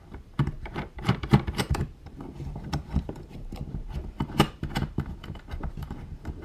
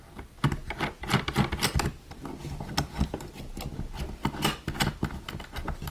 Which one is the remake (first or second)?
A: first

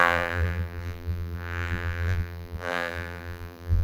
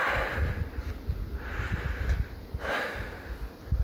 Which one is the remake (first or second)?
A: first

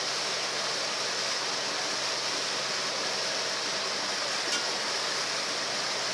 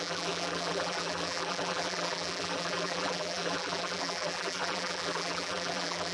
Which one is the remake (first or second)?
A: second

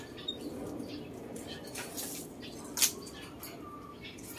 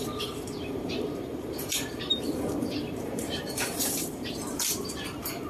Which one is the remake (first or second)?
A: second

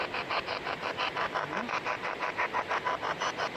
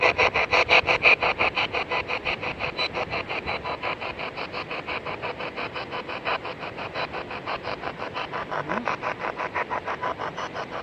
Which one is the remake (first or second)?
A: second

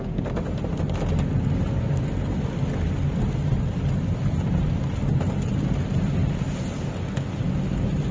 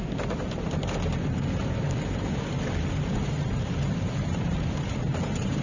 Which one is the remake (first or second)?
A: second